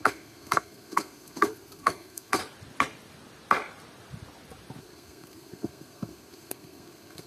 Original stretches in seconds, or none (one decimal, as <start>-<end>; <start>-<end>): 2.4-4.8